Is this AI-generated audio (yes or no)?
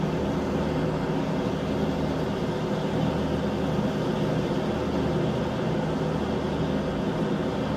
no